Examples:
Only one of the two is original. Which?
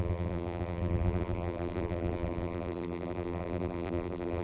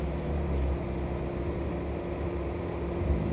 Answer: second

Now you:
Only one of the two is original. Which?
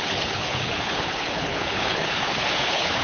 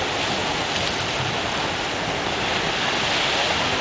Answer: second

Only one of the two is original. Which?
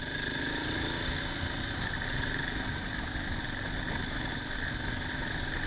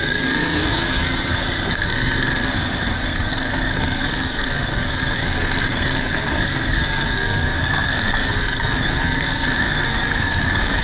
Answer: first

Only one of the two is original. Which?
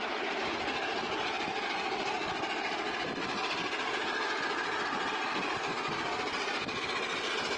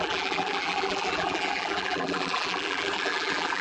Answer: first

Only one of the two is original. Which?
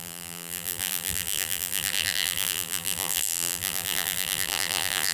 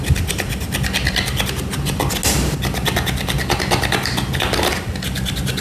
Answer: second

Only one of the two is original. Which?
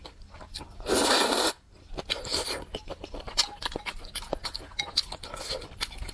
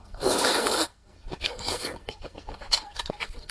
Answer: first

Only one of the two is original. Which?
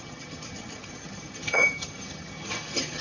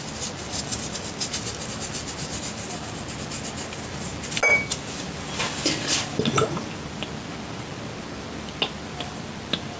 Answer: second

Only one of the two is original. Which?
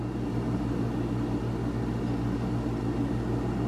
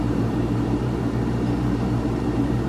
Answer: first